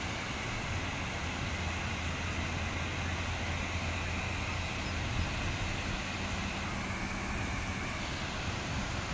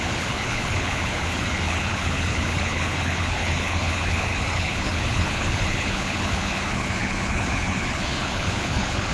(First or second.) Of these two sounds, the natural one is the first